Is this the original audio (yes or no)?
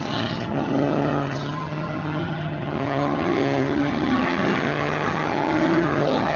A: no